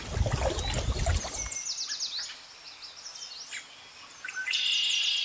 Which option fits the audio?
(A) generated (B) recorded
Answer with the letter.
B